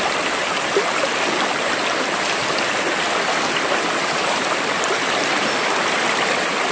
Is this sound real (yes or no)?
yes